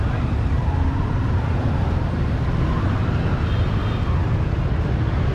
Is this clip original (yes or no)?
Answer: yes